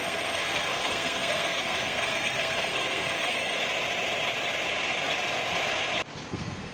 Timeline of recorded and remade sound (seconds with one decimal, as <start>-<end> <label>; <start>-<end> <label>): 0.0-3.6 remade; 3.6-6.3 recorded; 6.3-6.7 remade

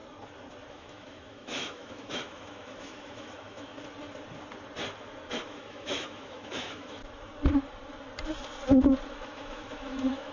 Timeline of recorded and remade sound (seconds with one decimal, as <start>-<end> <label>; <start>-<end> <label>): 0.0-0.7 recorded; 0.7-3.7 remade; 3.7-5.3 recorded; 5.3-7.0 remade; 7.0-9.1 recorded; 9.1-10.3 remade